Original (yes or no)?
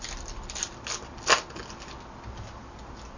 yes